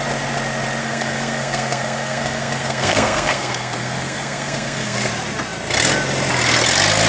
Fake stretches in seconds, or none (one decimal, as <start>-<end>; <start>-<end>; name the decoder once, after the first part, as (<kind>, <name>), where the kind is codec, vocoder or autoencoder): 0.8-5.1 (codec, SNAC)